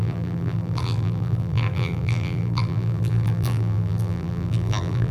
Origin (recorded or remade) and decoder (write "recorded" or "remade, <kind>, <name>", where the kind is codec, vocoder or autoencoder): remade, vocoder, BigVGAN v2